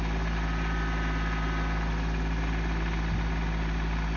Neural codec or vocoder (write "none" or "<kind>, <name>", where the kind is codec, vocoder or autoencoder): none